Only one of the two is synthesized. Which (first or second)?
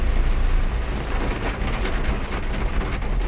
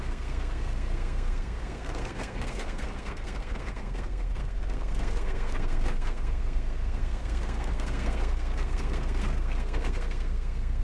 second